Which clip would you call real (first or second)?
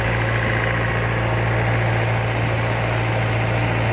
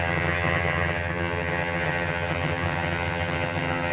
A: first